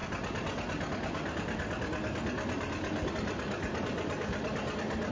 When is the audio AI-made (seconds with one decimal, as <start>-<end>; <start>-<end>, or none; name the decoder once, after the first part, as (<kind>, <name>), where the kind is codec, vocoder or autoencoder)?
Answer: none